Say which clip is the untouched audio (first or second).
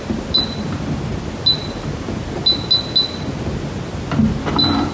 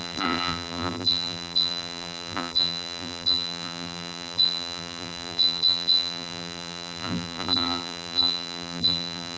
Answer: first